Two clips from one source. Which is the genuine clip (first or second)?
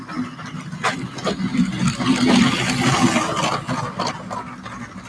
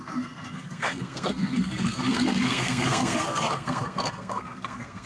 first